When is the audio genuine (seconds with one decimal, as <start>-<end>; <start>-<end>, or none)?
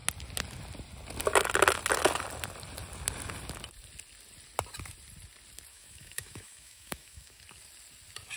0.0-5.7; 7.4-8.4